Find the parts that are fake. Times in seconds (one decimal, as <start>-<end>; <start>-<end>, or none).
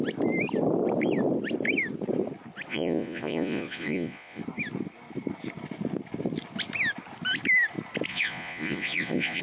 2.7-4.4; 8.1-9.4